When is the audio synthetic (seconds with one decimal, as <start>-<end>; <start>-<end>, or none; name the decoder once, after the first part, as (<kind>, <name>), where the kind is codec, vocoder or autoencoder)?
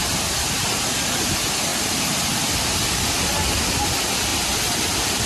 none